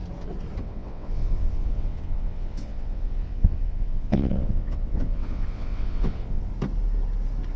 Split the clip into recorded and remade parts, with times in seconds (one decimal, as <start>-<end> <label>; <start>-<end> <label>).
0.0-0.6 recorded; 0.6-6.5 remade; 6.5-7.6 recorded